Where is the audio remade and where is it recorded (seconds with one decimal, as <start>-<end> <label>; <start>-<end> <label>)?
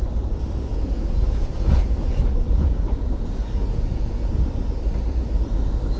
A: 0.0-0.7 recorded; 0.7-4.3 remade; 4.3-6.0 recorded